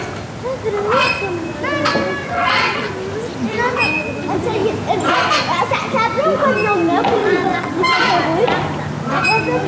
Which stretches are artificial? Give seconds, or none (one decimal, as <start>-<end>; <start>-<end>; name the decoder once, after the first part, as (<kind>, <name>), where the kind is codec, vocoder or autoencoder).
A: 2.2-2.9 (vocoder, WaveNeXt); 7.2-7.7